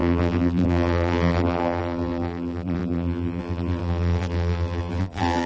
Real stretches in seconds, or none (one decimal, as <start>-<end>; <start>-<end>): none